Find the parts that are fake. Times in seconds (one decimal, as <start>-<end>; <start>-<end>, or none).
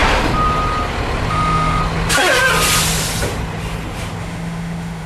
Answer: 1.3-1.8; 4.2-5.1